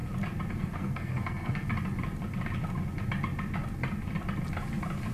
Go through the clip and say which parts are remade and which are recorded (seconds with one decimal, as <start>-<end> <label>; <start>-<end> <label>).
0.0-0.5 recorded; 0.5-1.7 remade; 1.7-5.1 recorded